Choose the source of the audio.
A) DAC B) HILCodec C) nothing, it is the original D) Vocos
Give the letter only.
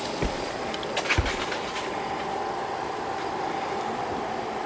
C